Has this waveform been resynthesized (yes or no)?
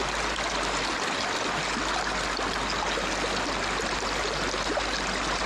no